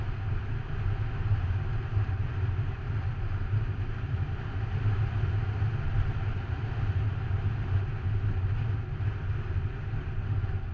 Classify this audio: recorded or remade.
recorded